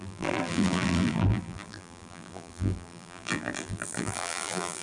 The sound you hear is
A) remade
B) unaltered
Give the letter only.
A